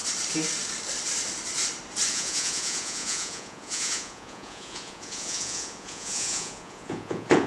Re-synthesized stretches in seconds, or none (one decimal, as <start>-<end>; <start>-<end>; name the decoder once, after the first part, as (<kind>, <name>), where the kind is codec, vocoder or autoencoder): 2.1-7.5 (vocoder, Vocos)